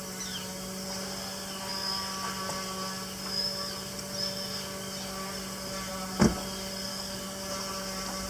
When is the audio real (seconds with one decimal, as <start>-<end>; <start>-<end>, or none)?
0.0-6.9; 7.5-8.3